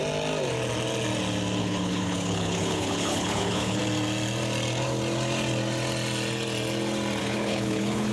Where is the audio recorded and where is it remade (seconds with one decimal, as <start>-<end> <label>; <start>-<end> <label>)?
0.0-1.6 recorded; 1.6-3.8 remade; 3.8-7.2 recorded; 7.2-8.1 remade